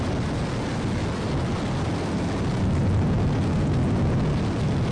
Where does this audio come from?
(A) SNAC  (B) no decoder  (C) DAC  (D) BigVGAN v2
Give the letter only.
B